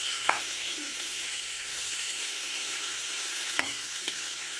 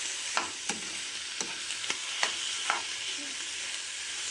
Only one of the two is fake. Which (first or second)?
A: first